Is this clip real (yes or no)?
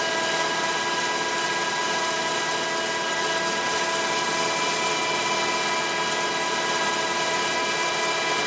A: yes